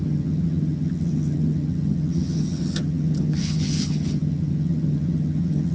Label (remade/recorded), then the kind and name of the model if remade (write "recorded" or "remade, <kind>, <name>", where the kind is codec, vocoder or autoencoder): remade, vocoder, HiFi-GAN